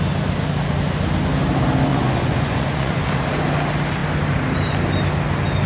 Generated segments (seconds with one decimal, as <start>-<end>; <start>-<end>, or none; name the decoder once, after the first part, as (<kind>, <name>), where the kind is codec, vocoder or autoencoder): 1.9-3.0 (vocoder, Vocos)

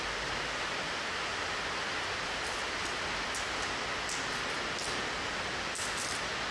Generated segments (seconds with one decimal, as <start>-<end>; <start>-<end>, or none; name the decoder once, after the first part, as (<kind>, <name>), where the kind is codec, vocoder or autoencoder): none

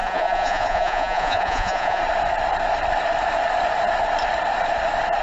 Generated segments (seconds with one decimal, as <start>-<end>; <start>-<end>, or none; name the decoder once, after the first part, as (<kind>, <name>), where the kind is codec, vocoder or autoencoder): 0.0-2.0 (vocoder, Vocos)

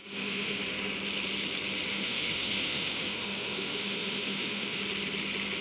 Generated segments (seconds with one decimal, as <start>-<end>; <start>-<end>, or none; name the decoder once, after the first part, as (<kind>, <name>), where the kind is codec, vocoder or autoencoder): 0.0-0.6 (autoencoder, DAC-VAE); 1.9-4.8

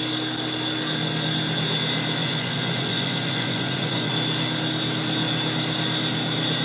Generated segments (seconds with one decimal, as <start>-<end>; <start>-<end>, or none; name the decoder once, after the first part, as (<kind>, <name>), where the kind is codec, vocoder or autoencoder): 2.2-4.1 (vocoder, Vocos)